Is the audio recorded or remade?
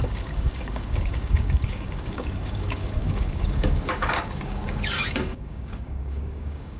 remade